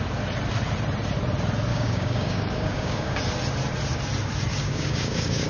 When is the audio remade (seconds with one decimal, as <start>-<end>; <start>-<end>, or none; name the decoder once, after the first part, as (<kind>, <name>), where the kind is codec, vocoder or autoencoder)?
1.7-3.2 (codec, DAC); 4.5-5.5